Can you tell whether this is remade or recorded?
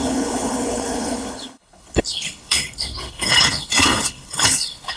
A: remade